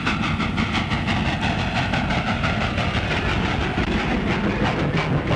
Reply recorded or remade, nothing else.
recorded